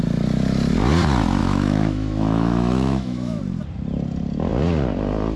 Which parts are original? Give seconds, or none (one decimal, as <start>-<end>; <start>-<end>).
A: 0.0-1.4; 3.4-5.4